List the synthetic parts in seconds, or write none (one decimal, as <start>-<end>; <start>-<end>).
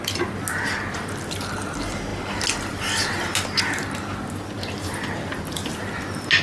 none